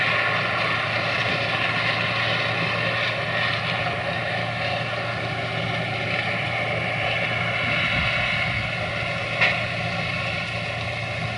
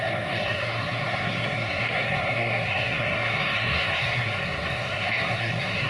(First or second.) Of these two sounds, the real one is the first